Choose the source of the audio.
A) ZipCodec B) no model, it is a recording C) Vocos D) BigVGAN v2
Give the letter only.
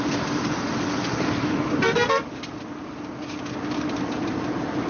B